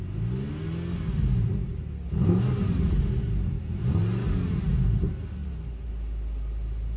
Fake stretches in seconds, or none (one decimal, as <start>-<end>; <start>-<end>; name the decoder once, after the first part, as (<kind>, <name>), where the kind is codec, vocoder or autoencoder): 5.4-5.9 (vocoder, BigVGAN v2)